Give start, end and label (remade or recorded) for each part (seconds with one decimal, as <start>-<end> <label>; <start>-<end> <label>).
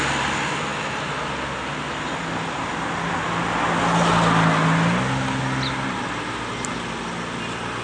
0.0-7.8 recorded